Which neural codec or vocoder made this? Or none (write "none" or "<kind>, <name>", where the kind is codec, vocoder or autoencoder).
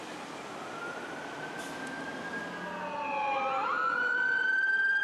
none